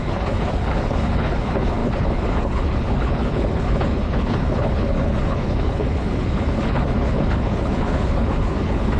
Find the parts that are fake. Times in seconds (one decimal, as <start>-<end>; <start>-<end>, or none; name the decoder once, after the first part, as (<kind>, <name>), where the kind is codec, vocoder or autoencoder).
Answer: 0.0-9.0 (codec, HILCodec)

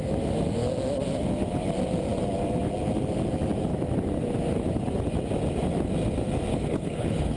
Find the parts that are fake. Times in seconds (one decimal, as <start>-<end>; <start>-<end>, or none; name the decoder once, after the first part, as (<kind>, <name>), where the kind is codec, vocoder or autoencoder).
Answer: 6.5-7.4 (codec, HILCodec)

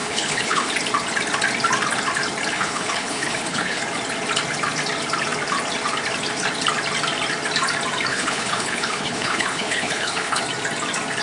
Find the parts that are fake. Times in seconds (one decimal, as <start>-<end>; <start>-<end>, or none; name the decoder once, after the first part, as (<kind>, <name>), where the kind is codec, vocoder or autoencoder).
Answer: 0.0-0.7 (codec, HILCodec); 2.5-3.8; 8.1-10.4

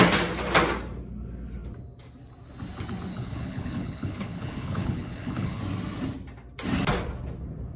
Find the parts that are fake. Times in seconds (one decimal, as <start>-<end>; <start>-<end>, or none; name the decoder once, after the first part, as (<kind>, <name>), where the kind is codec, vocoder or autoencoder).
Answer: 3.1-5.6 (codec, HILCodec)

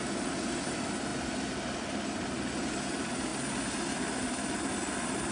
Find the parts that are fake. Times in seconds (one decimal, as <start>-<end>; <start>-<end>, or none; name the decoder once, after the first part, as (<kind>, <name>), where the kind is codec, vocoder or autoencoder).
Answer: none

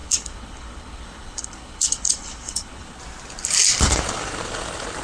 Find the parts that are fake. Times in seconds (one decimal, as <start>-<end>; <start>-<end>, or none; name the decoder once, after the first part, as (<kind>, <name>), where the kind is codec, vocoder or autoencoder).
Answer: 0.0-3.0 (codec, HILCodec)

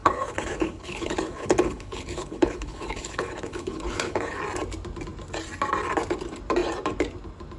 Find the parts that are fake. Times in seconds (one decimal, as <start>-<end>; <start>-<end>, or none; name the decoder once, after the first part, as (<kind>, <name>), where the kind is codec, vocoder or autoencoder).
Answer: 0.0-4.4 (codec, HILCodec)